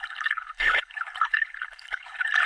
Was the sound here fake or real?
fake